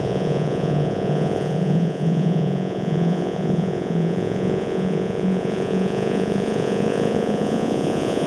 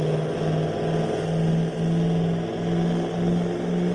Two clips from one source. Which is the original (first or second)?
second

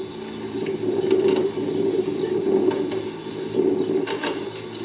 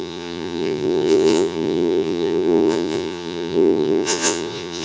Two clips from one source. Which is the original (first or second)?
first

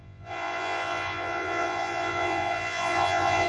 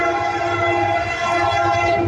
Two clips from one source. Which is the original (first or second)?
second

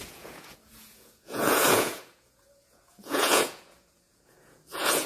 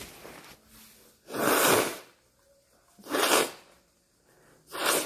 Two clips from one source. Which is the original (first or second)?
second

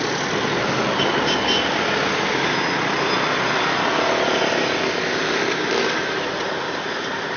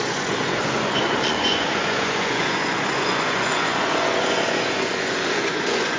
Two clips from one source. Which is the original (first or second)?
first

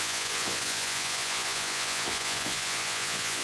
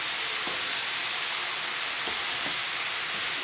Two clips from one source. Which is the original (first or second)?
second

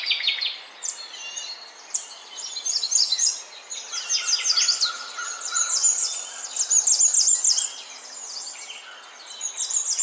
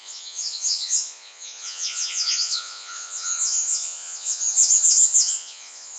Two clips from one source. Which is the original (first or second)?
first